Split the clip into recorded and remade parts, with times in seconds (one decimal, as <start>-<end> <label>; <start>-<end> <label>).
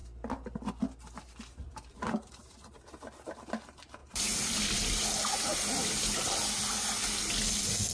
0.0-4.0 recorded; 4.0-5.0 remade; 5.0-7.9 recorded